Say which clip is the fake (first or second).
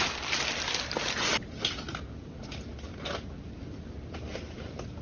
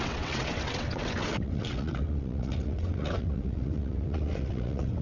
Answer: second